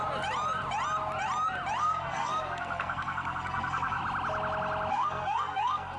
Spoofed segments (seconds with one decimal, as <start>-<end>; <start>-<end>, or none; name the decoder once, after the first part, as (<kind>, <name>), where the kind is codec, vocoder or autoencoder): 1.8-4.0 (codec, SNAC); 4.9-6.0